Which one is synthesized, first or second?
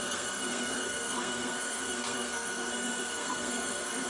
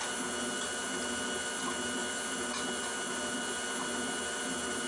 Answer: first